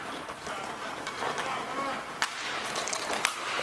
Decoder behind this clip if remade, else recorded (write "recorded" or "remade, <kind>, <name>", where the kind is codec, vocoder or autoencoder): recorded